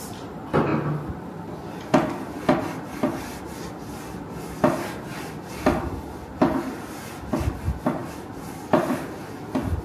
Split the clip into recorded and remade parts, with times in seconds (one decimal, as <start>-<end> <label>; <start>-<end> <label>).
0.0-0.7 remade; 0.7-3.2 recorded; 3.2-9.8 remade